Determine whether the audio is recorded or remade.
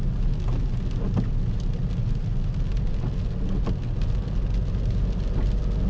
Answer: recorded